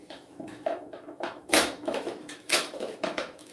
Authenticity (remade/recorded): remade